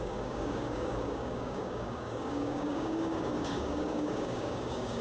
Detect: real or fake fake